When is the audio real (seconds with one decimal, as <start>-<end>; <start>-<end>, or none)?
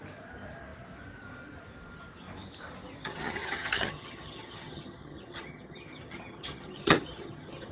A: 0.0-3.0